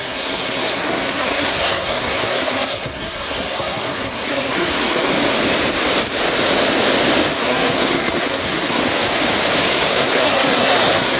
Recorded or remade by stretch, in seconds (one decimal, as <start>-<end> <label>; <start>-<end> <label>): 0.0-5.1 remade; 5.1-7.4 recorded; 7.4-8.8 remade; 8.8-9.7 recorded; 9.7-11.2 remade